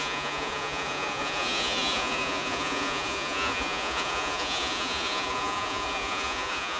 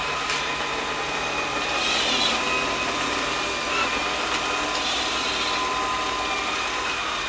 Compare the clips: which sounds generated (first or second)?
first